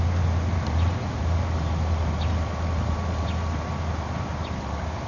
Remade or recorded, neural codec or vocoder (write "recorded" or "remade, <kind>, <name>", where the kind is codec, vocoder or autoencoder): recorded